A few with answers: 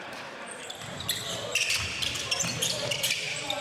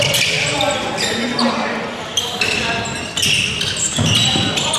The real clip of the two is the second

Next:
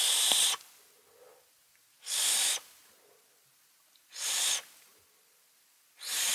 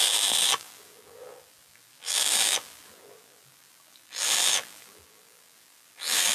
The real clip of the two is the first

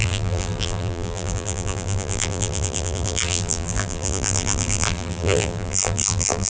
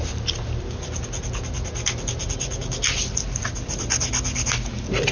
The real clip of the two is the second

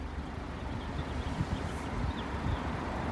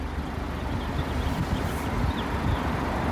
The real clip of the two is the second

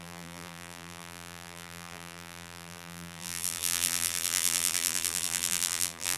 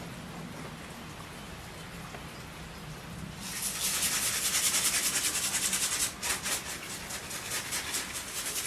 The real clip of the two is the second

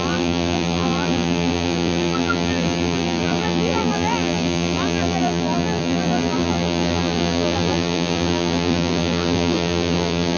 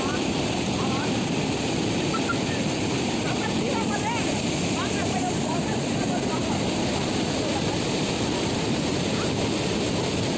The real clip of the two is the second